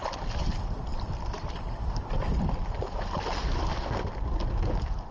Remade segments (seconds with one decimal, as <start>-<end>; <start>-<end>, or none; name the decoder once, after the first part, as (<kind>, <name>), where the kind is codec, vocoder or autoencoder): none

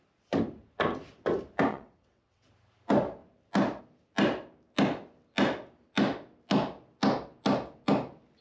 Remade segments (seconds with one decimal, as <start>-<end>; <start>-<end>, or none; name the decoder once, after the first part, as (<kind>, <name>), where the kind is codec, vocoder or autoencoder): 1.7-2.5 (vocoder, WaveNeXt)

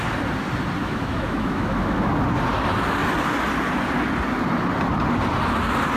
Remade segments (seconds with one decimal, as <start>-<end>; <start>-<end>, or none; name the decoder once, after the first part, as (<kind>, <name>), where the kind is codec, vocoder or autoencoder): 0.8-2.1 (autoencoder, DAC-VAE)

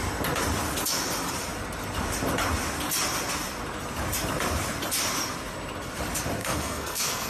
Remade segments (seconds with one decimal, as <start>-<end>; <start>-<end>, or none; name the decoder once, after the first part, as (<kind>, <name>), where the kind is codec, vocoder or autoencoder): 6.4-7.3 (codec, SNAC)

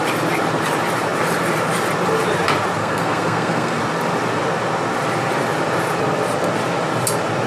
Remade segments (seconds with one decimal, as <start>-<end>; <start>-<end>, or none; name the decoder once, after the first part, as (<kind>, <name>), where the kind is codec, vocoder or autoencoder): 2.8-3.8 (codec, SNAC)

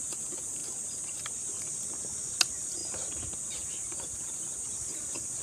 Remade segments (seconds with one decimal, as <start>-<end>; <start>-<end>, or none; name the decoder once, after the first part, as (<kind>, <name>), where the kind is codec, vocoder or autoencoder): 0.0-0.6 (vocoder, BigVGAN v2); 2.3-2.8; 4.0-5.4

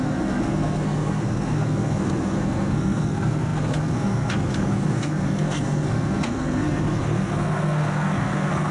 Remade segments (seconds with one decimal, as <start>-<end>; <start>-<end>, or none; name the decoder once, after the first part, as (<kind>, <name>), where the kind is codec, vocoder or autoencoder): 0.0-8.7 (codec, SNAC)